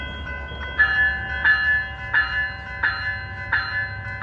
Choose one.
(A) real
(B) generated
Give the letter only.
A